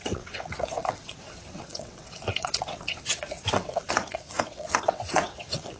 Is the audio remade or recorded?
remade